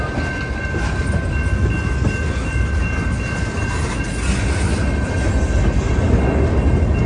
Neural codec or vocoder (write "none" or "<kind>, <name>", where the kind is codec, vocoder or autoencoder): none